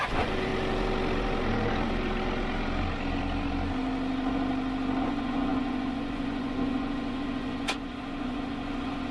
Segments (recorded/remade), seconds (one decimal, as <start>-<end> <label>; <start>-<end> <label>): 0.0-0.5 remade; 0.5-5.0 recorded; 5.0-9.1 remade